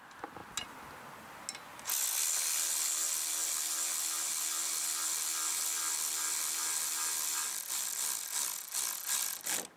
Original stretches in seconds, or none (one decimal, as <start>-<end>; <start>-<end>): 0.0-9.8

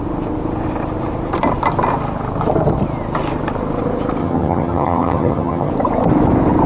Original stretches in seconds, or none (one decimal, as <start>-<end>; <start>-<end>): 0.0-4.2; 5.7-6.7

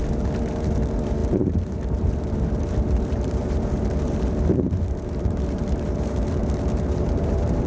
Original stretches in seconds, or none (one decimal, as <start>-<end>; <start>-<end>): none

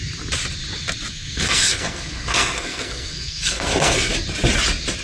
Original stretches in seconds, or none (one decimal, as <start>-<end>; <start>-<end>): 0.0-1.1; 4.1-5.0

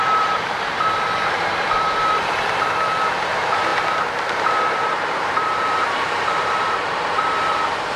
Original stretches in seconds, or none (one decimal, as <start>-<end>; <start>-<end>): none

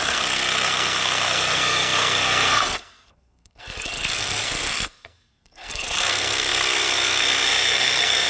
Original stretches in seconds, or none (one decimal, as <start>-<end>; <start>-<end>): none

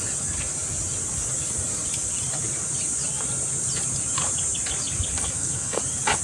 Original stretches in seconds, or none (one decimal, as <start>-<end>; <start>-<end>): 0.0-5.1; 5.8-6.2